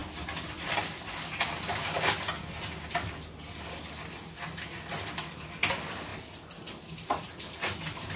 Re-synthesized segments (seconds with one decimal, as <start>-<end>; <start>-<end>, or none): none